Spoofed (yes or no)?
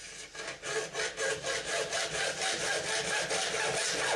no